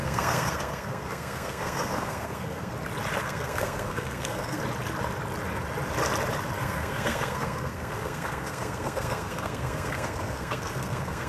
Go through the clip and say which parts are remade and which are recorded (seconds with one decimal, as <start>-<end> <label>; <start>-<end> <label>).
0.0-2.7 remade; 2.7-3.2 recorded; 3.2-4.6 remade; 4.6-6.6 recorded; 6.6-11.3 remade